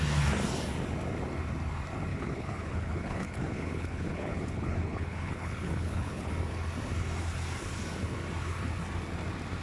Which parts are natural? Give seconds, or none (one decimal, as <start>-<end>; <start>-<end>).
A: 0.0-2.1; 6.3-9.6